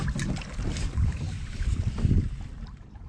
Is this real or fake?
real